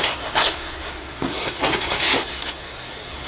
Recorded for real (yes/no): no